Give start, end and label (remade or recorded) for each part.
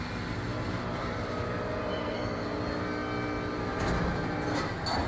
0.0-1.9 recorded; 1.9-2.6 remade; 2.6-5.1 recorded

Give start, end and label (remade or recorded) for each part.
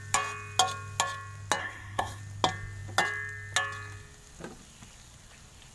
0.0-1.6 recorded; 1.6-2.2 remade; 2.2-5.7 recorded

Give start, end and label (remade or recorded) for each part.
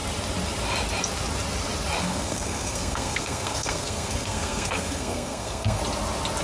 0.0-2.0 recorded; 2.0-5.8 remade; 5.8-6.4 recorded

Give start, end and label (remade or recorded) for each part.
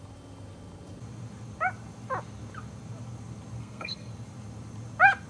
0.0-3.6 recorded; 3.6-4.1 remade; 4.1-5.3 recorded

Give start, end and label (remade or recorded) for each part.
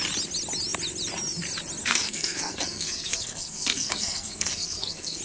0.0-1.8 recorded; 1.8-5.2 remade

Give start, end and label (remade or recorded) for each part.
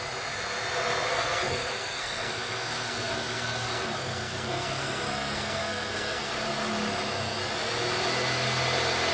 0.0-1.1 recorded; 1.1-6.3 remade; 6.3-9.1 recorded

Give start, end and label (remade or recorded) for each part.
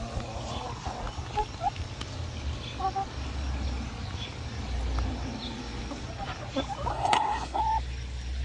0.0-6.9 recorded; 6.9-7.6 remade; 7.6-8.4 recorded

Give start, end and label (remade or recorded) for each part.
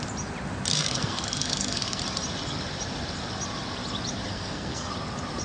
0.0-0.7 recorded; 0.7-2.0 remade; 2.0-4.3 recorded; 4.3-4.9 remade; 4.9-5.4 recorded